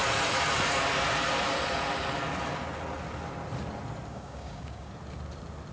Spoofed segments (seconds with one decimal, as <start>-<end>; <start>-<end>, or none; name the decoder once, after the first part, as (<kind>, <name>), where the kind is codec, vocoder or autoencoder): 4.1-4.9 (codec, DAC)